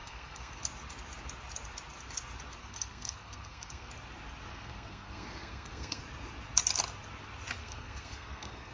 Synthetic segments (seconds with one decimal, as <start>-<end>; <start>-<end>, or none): 0.0-0.6; 2.6-3.9; 4.5-6.0; 7.6-8.7